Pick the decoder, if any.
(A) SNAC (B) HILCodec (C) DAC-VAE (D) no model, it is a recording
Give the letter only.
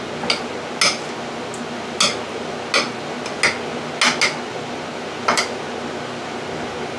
D